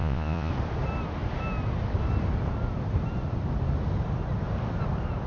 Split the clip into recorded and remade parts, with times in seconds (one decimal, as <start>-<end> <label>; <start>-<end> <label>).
0.0-0.5 remade; 0.5-5.3 recorded